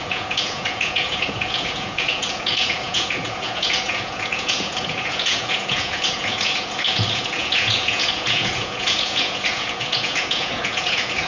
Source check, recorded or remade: remade